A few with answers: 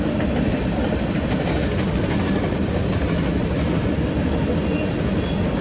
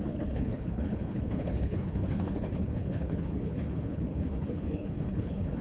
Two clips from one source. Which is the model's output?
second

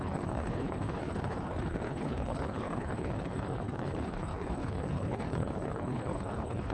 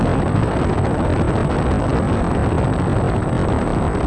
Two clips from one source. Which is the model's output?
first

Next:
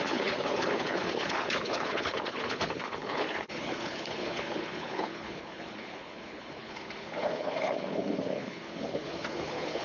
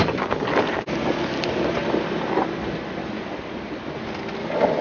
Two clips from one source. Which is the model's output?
first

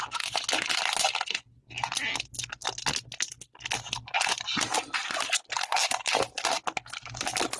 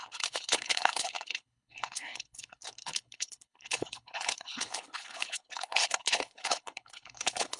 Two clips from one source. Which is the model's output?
second